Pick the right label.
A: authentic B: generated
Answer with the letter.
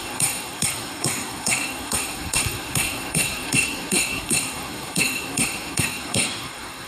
B